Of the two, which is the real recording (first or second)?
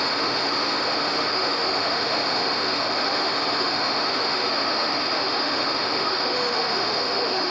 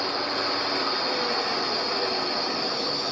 second